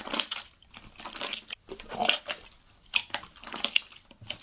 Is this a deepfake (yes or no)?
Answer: no